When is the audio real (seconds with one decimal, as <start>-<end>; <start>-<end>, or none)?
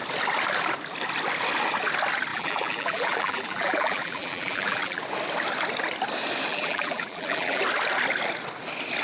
0.0-2.3; 5.0-6.5; 7.6-9.0